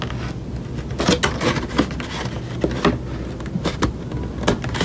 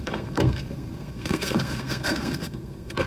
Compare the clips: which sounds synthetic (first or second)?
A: second